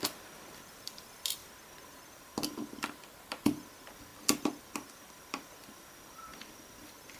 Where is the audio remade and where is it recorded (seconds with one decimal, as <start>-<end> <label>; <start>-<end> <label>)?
0.0-1.4 remade; 1.4-2.5 recorded; 2.5-7.2 remade